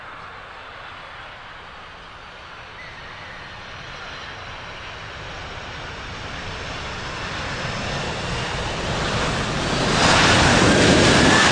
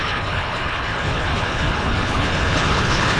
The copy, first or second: second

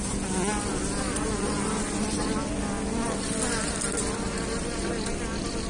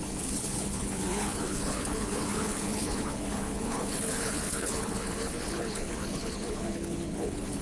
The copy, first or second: second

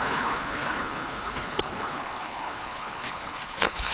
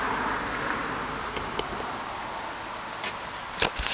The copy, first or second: first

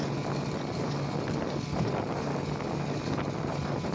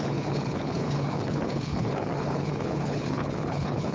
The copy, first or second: second